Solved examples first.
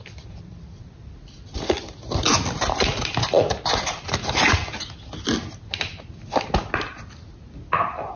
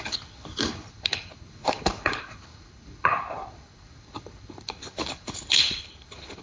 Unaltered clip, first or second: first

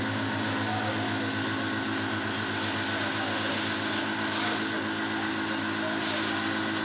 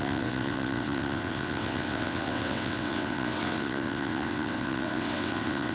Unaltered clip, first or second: first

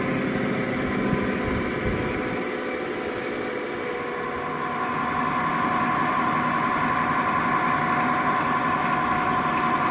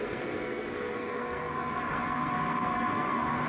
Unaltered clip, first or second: first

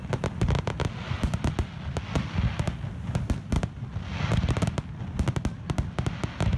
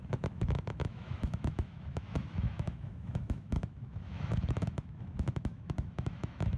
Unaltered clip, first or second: first